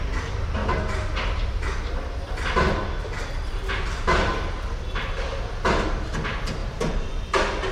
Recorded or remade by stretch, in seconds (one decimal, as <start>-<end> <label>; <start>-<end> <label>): 0.0-6.6 recorded; 6.6-7.1 remade; 7.1-7.7 recorded